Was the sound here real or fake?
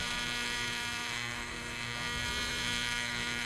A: fake